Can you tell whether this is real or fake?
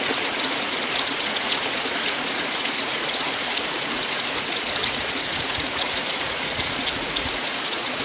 fake